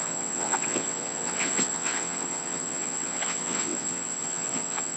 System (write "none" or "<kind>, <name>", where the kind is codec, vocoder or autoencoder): vocoder, WaveNeXt